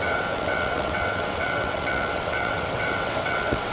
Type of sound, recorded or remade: remade